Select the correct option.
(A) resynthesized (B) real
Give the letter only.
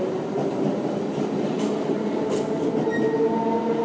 B